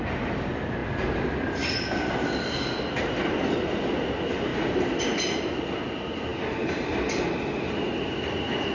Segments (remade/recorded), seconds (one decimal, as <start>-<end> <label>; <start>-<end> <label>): 0.0-8.7 recorded